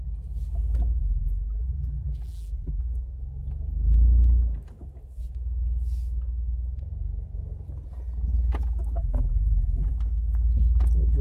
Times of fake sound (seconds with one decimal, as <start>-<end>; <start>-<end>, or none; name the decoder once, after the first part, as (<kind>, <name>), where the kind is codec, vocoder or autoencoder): 1.0-2.8 (vocoder, BigVGAN v2); 9.0-9.9